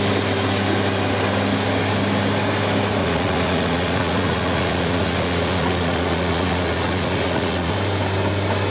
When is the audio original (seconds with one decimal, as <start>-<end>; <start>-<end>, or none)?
0.0-3.0; 7.7-8.7